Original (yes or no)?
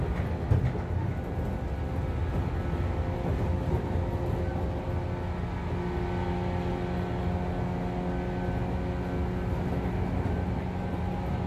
yes